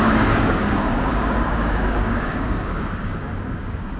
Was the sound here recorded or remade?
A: remade